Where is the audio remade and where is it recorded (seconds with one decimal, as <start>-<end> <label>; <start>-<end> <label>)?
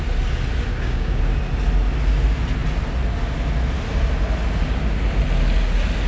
0.0-0.7 recorded; 0.7-1.2 remade; 1.2-6.1 recorded